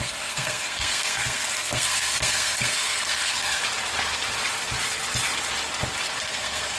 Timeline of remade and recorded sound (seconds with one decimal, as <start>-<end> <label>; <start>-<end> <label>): 0.0-3.6 remade; 3.6-6.2 recorded; 6.2-6.8 remade